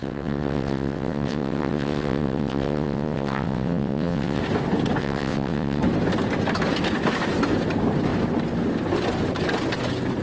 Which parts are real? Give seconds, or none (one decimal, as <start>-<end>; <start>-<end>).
4.4-5.0; 5.8-10.2